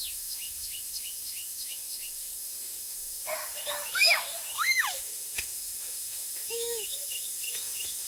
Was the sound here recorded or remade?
remade